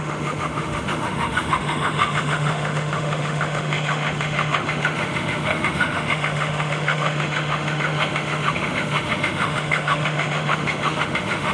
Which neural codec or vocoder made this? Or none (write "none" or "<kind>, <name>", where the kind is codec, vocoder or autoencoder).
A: autoencoder, DAC-VAE